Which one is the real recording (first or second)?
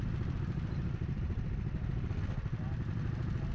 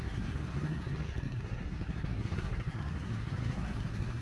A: first